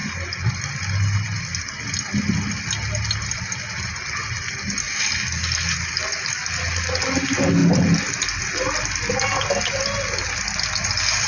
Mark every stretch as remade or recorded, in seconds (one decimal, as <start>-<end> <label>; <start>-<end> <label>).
0.0-11.3 recorded